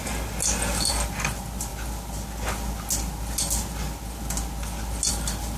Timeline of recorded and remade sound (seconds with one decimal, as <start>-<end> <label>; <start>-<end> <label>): 0.0-5.6 recorded